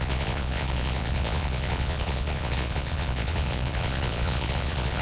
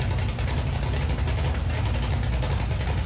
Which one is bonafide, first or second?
second